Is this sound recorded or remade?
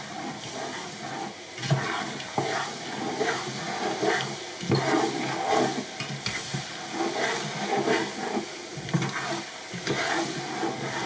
recorded